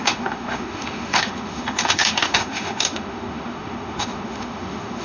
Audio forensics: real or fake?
fake